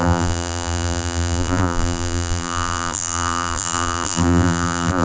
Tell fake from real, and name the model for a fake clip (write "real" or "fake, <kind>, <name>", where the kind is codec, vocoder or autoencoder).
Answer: fake, vocoder, BigVGAN v2